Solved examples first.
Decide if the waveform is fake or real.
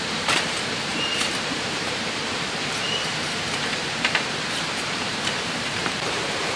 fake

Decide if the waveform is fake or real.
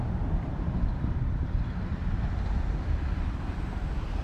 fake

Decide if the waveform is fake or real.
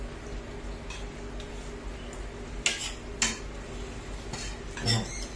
real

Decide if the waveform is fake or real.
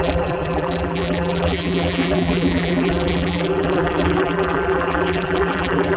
fake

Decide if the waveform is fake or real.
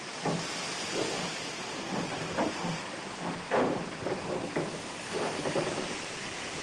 fake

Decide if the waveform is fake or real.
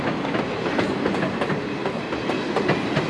real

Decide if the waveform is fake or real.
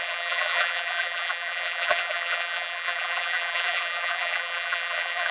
fake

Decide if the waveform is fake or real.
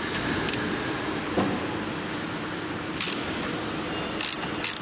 real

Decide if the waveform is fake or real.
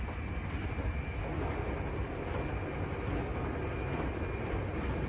real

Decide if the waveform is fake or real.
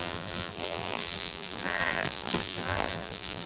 fake